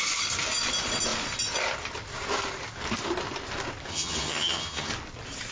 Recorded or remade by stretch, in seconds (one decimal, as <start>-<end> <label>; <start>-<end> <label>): 0.0-3.9 recorded; 3.9-4.9 remade; 4.9-5.5 recorded